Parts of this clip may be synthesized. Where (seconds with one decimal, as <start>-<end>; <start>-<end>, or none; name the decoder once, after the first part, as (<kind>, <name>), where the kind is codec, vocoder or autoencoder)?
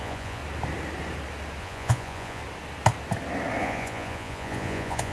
0.0-0.4 (vocoder, Vocos); 1.6-2.4; 3.6-5.1